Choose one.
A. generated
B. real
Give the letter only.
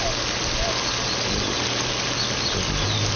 B